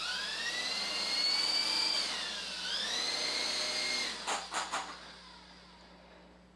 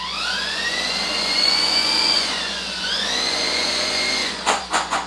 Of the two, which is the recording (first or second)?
first